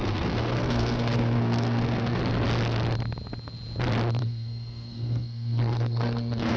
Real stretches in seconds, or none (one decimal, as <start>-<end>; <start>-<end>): 2.2-4.2